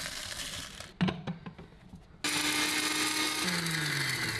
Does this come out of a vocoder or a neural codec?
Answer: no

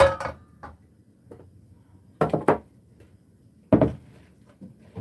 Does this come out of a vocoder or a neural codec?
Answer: no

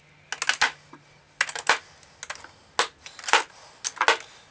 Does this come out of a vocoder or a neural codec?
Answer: no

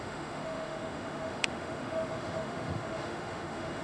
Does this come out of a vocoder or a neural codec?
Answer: yes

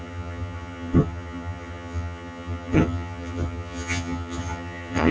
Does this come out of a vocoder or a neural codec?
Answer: yes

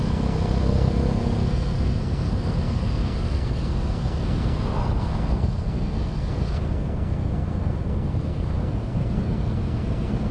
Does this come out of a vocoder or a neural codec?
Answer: yes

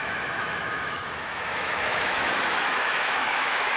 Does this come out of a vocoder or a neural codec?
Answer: yes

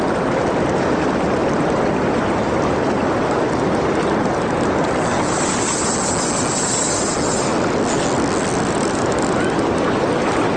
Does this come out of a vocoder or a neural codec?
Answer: no